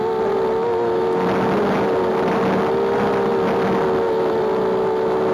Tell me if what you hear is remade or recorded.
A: recorded